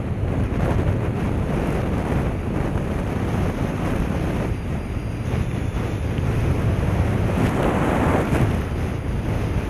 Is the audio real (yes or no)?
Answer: yes